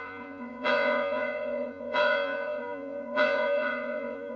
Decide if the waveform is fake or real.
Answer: fake